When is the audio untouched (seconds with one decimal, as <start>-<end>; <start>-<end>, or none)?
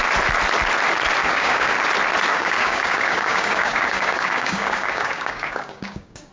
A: 0.0-1.2; 1.7-2.3